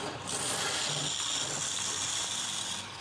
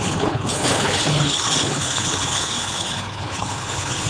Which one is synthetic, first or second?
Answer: second